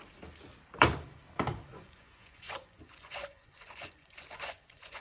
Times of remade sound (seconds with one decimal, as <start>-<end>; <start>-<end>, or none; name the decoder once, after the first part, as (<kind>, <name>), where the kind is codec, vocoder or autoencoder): 1.7-5.0 (vocoder, Vocos)

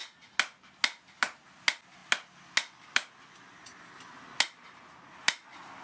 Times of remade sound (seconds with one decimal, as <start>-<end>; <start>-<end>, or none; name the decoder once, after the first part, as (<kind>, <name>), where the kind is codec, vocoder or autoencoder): none